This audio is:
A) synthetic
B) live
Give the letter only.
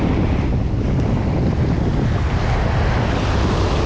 B